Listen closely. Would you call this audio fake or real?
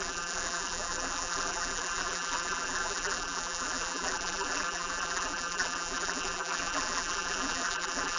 fake